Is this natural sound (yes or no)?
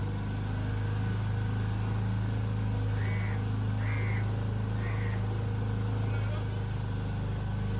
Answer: yes